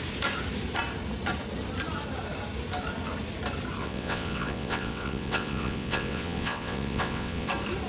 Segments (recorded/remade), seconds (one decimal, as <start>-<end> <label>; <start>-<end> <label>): 0.0-3.8 recorded; 3.8-7.5 remade; 7.5-7.9 recorded